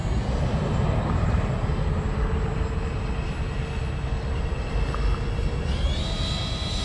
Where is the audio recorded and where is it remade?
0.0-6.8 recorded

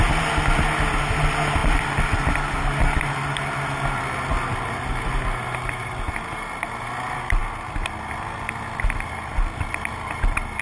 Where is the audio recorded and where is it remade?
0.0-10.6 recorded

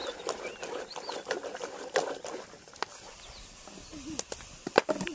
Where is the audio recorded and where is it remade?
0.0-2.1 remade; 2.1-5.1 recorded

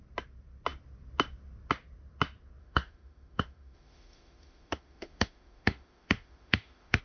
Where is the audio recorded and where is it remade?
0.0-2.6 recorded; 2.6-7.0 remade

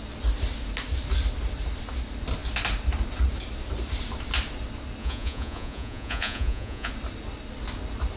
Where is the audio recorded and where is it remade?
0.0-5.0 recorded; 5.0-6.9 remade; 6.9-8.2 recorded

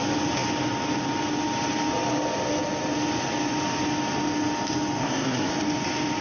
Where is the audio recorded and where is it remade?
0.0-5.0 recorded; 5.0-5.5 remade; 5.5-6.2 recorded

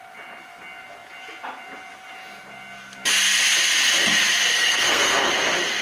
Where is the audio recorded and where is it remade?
0.0-4.5 recorded; 4.5-5.3 remade; 5.3-5.8 recorded

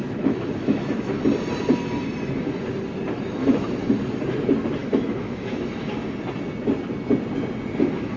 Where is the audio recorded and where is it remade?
0.0-1.2 remade; 1.2-3.4 recorded; 3.4-3.9 remade; 3.9-4.8 recorded; 4.8-5.9 remade; 5.9-8.2 recorded